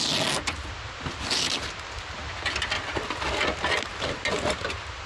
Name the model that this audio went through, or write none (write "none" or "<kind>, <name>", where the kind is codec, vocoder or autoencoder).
none